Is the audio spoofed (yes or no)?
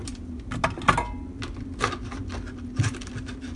no